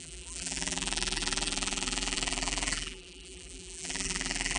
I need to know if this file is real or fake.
fake